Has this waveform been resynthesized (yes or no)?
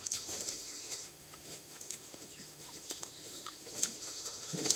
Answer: yes